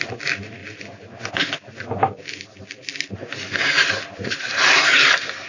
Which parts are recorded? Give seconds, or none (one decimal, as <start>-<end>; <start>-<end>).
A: 0.6-3.9